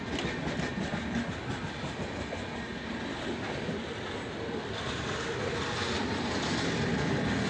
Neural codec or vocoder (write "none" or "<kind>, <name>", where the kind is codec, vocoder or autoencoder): none